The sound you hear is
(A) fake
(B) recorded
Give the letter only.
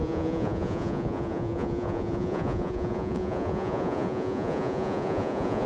A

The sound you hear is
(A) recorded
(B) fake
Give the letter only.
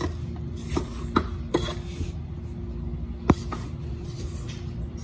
A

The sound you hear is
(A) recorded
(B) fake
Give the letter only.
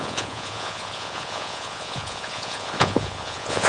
B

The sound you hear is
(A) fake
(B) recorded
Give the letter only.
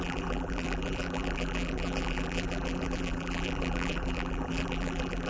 A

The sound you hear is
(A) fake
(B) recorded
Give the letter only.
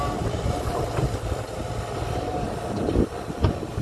A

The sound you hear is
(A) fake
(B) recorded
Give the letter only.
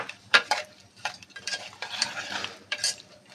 A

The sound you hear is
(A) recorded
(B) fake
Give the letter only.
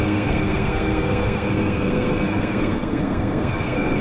B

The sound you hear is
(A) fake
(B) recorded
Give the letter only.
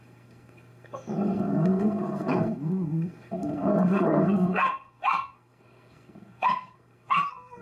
A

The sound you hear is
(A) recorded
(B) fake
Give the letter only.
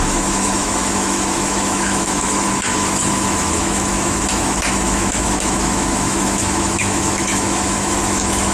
B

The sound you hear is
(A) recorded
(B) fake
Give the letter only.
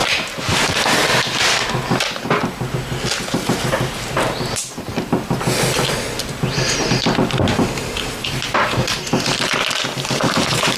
A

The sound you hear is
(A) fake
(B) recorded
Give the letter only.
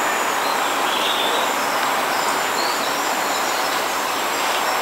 B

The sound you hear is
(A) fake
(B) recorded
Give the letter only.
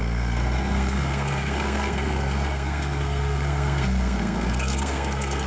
A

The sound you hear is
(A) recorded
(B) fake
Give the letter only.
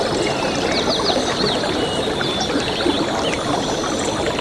A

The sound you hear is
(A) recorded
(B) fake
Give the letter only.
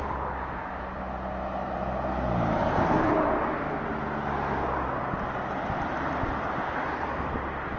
A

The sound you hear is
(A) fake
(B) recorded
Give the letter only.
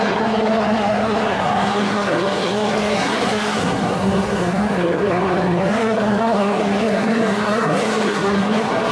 A